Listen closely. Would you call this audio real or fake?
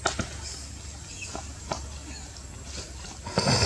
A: real